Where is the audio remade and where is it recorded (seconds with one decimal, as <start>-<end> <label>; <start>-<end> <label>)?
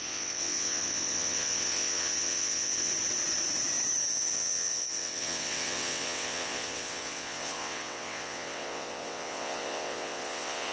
0.0-2.9 remade; 2.9-4.1 recorded; 4.1-10.7 remade